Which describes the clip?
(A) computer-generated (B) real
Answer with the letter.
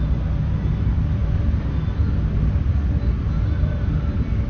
B